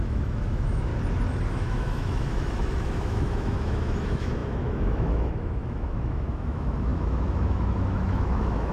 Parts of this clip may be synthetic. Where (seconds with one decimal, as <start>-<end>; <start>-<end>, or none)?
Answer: 0.0-0.9; 1.5-8.7